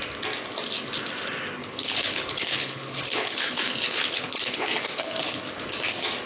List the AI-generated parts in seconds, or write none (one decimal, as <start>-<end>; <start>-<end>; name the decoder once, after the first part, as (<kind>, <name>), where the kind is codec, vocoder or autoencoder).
1.6-5.4 (codec, HILCodec)